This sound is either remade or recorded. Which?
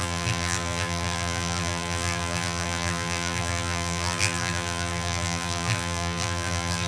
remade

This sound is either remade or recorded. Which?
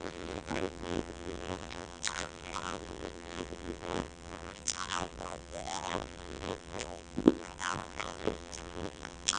remade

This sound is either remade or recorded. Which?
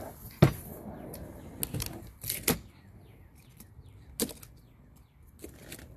recorded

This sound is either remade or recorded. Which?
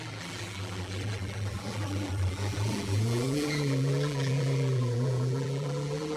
remade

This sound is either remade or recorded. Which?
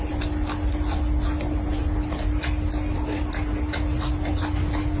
recorded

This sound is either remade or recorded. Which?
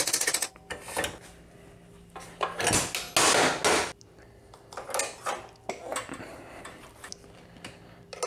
recorded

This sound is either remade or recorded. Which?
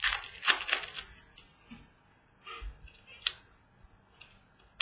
recorded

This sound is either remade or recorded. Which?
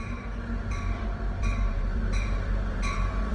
remade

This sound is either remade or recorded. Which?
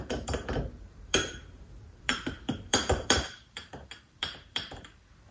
remade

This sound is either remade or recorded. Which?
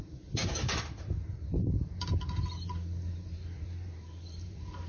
remade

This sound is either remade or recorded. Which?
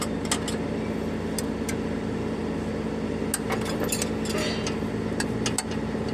recorded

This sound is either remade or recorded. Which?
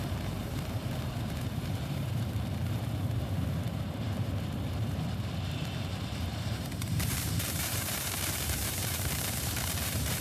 remade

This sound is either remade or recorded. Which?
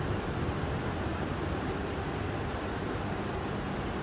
recorded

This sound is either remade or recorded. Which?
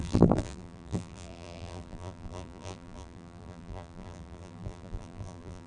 remade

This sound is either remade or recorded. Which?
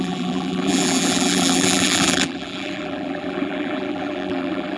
remade